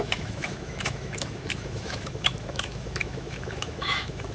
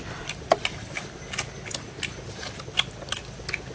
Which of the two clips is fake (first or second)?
first